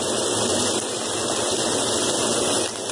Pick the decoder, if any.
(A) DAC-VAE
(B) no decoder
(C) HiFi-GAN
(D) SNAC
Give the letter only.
B